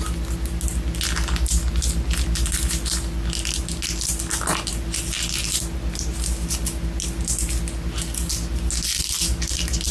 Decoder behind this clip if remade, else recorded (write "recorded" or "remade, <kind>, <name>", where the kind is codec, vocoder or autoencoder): recorded